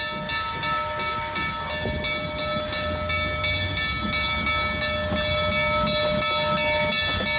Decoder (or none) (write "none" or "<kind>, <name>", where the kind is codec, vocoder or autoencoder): none